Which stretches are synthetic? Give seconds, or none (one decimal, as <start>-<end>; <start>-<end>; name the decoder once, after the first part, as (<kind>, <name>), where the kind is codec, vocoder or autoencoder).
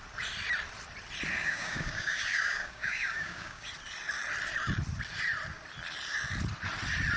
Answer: 1.4-3.7 (codec, DAC)